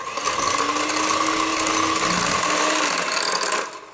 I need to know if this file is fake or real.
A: real